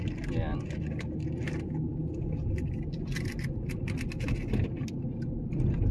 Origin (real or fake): real